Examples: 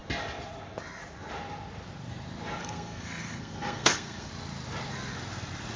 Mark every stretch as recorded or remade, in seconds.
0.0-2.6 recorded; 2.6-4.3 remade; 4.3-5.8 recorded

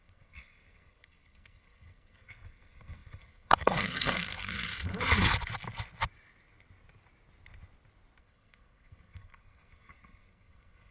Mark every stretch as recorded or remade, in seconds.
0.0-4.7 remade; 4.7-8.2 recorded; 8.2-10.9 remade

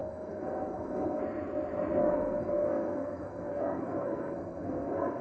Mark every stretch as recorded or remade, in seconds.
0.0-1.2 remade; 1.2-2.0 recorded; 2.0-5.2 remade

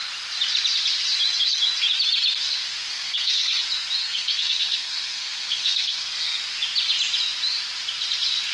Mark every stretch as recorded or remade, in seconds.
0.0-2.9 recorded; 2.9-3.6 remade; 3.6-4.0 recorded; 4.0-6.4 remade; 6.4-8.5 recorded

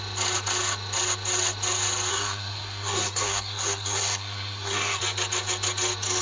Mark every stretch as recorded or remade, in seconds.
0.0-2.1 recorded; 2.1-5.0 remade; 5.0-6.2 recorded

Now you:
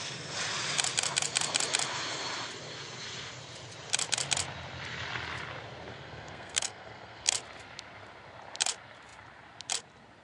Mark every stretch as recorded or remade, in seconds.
0.0-5.9 recorded; 5.9-7.3 remade; 7.3-10.2 recorded